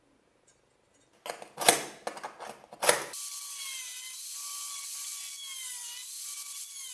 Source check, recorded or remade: recorded